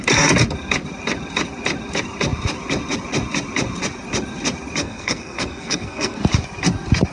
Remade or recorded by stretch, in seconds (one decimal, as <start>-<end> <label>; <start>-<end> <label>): 0.0-4.8 recorded; 4.8-6.2 remade; 6.2-7.1 recorded